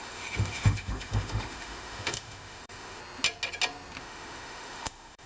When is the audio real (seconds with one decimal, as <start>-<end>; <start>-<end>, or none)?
3.0-4.0